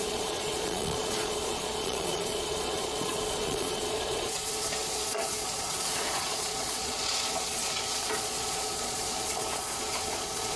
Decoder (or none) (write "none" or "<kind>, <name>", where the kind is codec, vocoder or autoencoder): vocoder, Vocos